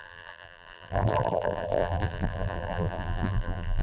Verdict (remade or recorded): remade